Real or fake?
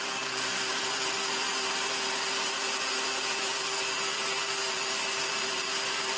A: real